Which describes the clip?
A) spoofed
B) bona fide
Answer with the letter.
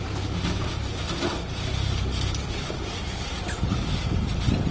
B